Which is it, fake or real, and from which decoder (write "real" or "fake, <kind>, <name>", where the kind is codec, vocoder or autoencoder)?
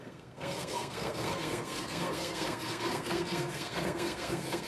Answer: fake, codec, SNAC